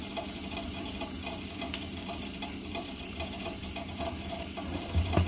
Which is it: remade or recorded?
remade